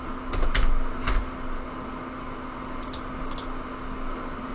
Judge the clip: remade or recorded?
recorded